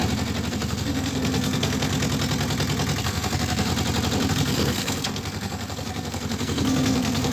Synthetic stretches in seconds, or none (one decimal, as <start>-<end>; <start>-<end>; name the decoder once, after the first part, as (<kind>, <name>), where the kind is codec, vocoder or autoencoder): 0.5-1.9 (codec, SNAC); 3.0-3.7; 4.3-7.3